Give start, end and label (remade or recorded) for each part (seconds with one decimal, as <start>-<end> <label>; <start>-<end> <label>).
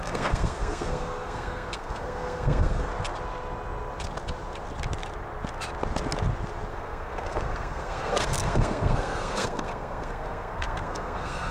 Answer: 0.0-2.9 remade; 2.9-6.7 recorded; 6.7-11.5 remade